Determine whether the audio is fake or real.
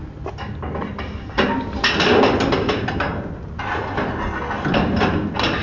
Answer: real